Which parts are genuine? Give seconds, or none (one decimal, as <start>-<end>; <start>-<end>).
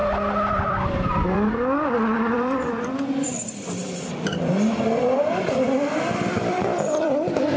0.0-0.5